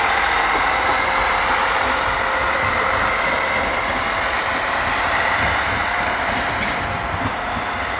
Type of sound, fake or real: real